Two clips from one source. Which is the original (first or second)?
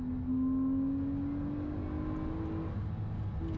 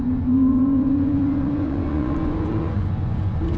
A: first